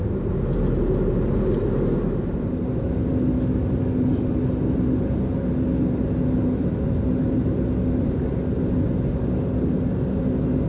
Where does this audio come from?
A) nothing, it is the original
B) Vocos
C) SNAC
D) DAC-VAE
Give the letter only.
A